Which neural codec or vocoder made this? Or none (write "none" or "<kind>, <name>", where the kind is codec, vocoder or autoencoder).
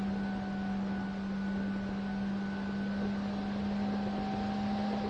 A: none